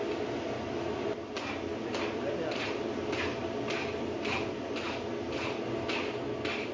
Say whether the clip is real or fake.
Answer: real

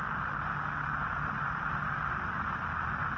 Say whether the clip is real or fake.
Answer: real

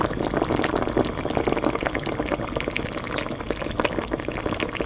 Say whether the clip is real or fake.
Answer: real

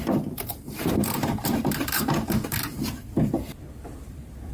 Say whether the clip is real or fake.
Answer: fake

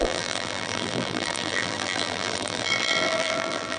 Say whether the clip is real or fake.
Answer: fake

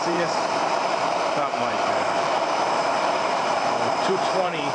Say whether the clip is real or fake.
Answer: fake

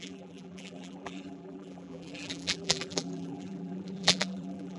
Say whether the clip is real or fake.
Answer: fake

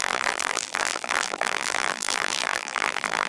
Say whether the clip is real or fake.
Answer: fake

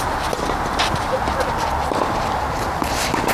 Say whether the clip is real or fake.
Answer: real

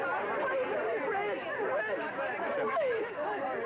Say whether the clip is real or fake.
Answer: real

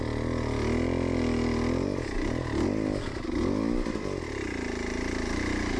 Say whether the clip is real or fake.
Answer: real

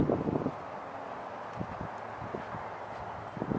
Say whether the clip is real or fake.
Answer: real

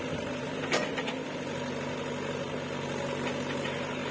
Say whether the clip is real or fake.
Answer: real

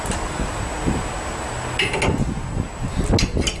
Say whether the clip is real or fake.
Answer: real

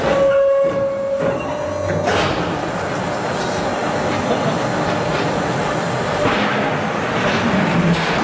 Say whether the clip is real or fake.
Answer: real